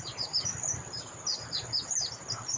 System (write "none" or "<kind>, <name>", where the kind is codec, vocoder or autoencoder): none